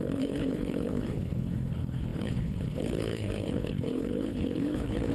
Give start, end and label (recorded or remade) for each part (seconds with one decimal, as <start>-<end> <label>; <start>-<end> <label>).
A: 0.0-5.1 remade

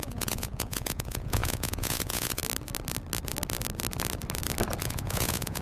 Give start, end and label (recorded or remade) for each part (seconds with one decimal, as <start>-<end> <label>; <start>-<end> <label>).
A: 0.0-2.4 remade; 2.4-4.8 recorded; 4.8-5.6 remade

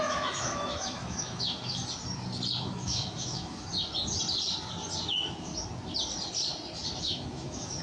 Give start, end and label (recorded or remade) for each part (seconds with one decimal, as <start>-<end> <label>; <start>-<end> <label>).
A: 0.0-1.8 remade; 1.8-2.6 recorded; 2.6-3.7 remade; 3.7-5.1 recorded; 5.1-5.5 remade; 5.5-7.0 recorded; 7.0-7.8 remade

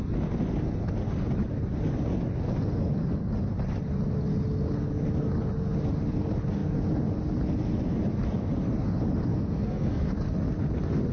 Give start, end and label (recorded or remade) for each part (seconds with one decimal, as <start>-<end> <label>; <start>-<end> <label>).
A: 0.0-9.3 recorded; 9.3-10.1 remade; 10.1-11.1 recorded

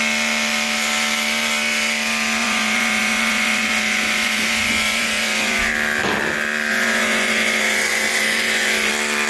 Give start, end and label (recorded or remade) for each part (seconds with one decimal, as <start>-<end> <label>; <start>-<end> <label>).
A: 0.0-2.4 recorded; 2.4-5.7 remade; 5.7-6.7 recorded; 6.7-8.9 remade; 8.9-9.3 recorded

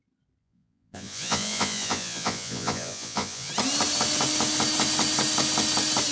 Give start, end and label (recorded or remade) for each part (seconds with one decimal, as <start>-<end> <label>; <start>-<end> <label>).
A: 0.0-0.4 recorded; 0.4-3.5 remade; 3.5-6.1 recorded

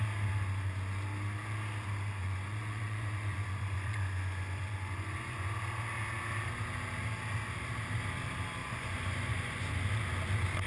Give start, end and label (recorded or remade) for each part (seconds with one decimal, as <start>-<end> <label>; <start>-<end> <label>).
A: 0.0-2.2 recorded; 2.2-5.5 remade; 5.5-8.6 recorded; 8.6-9.7 remade; 9.7-10.7 recorded